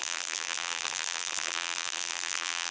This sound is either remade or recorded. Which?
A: remade